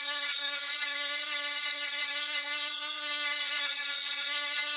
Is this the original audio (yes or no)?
no